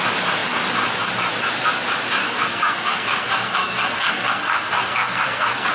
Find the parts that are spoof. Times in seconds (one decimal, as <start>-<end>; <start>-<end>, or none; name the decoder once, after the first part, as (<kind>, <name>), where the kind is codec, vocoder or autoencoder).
2.2-5.7 (codec, SNAC)